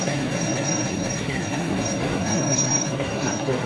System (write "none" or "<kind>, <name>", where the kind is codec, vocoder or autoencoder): codec, SNAC